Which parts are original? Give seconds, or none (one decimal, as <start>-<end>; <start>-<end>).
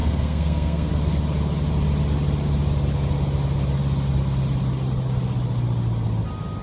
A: 0.9-6.6